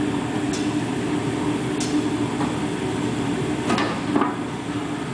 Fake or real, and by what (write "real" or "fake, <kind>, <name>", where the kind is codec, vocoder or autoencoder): real